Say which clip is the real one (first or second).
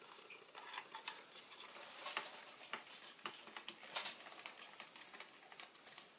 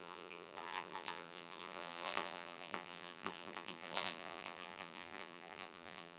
first